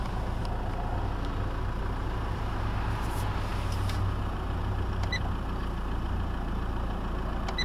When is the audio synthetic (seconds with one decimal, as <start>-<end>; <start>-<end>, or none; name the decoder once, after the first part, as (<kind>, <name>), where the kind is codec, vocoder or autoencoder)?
0.0-0.4 (vocoder, BigVGAN v2); 1.8-3.5; 4.2-7.6